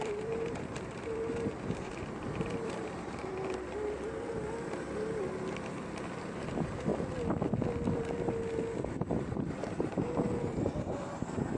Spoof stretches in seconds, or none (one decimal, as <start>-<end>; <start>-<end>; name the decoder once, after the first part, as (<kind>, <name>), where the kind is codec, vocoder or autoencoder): 0.0-3.3 (vocoder, BigVGAN v2); 6.2-6.9; 9.1-11.6